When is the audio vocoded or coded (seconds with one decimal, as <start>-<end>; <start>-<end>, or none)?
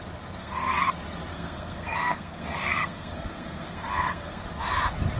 0.4-0.9; 1.3-4.4